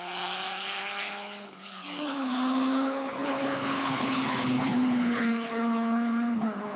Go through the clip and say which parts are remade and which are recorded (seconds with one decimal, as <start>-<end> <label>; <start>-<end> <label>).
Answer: 0.0-6.8 remade